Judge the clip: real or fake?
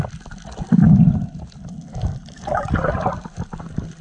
real